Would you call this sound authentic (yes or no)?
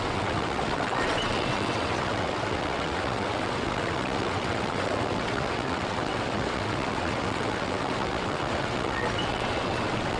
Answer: no